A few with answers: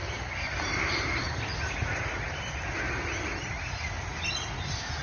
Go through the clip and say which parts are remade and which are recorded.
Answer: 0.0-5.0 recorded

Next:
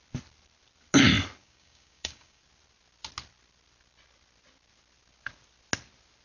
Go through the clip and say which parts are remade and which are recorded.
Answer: 0.0-1.4 recorded; 1.4-2.4 remade; 2.4-6.2 recorded